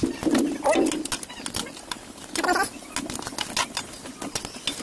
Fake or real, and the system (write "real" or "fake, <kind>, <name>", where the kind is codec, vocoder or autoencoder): real